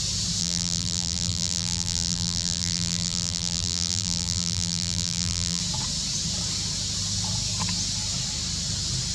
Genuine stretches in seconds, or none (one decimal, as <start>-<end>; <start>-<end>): 0.0-0.4; 5.6-9.1